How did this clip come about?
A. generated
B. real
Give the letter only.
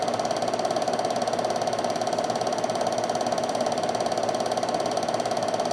B